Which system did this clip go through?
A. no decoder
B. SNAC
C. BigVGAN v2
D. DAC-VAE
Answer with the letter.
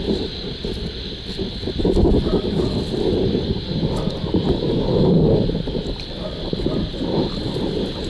A